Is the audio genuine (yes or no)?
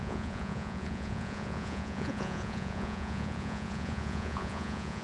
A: no